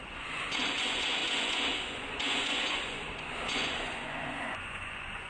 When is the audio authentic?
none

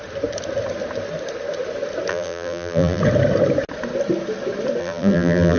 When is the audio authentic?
0.0-2.1; 3.0-4.8

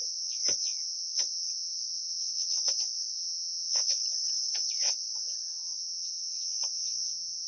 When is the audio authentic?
4.0-4.8

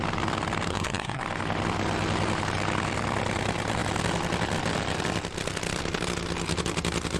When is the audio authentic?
0.0-0.7; 1.2-7.2

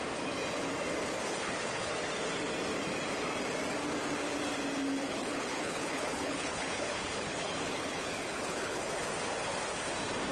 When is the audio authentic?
0.0-1.3; 1.9-5.1; 8.8-10.3

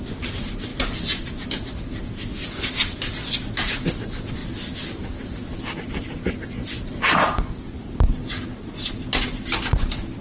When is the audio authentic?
0.0-0.7; 2.6-6.6; 8.4-10.2

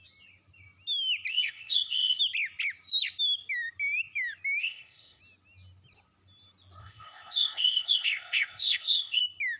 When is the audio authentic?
0.0-1.3; 2.2-4.6; 5.2-6.8; 9.2-9.6